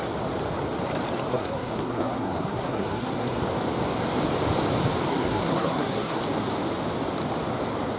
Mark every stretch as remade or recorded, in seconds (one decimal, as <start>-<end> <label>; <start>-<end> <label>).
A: 0.0-1.3 recorded; 1.3-3.4 remade; 3.4-5.1 recorded; 5.1-6.2 remade; 6.2-8.0 recorded